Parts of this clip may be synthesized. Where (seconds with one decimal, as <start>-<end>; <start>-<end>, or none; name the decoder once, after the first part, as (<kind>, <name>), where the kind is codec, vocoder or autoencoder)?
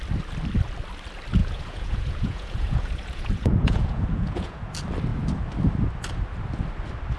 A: 1.4-4.6 (vocoder, Vocos)